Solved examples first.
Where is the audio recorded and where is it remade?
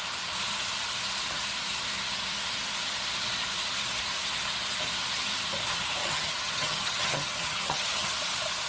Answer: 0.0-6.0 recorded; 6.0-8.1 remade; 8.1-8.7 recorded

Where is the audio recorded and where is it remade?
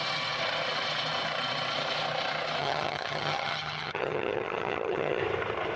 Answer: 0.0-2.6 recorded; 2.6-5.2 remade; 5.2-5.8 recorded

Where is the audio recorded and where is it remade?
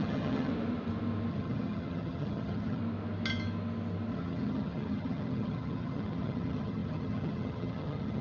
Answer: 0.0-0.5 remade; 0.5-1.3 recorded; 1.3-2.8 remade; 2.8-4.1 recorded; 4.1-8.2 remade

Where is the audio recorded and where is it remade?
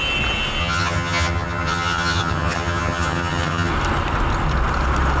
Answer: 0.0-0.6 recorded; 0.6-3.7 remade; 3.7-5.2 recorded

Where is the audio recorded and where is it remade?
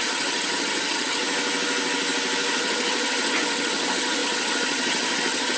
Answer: 0.0-1.2 remade; 1.2-2.5 recorded; 2.5-5.6 remade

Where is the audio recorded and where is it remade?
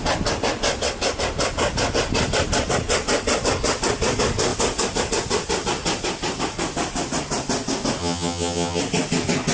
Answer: 0.0-8.0 recorded; 8.0-8.8 remade; 8.8-9.5 recorded